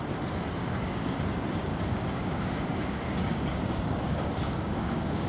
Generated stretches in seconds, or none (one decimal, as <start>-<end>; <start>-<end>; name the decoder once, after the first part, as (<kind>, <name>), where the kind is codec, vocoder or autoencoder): 0.6-1.2 (codec, DAC); 1.7-5.3